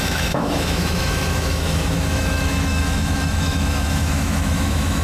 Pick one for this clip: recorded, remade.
remade